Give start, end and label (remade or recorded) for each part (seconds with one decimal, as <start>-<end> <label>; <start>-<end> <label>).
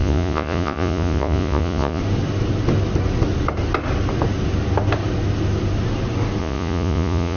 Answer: 0.0-2.0 remade; 2.0-6.4 recorded; 6.4-7.4 remade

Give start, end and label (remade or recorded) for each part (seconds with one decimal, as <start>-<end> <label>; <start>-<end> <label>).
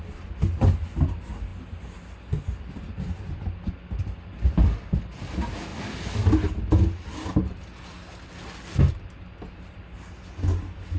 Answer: 0.0-11.0 recorded